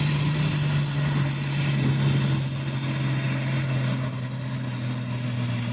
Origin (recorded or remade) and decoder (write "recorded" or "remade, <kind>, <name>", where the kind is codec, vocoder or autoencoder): recorded